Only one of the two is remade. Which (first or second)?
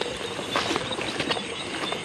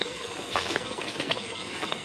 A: second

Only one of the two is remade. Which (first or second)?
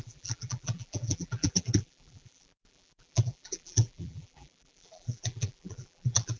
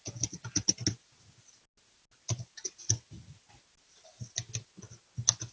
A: first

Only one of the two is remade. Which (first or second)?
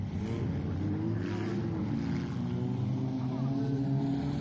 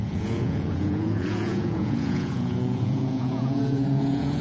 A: second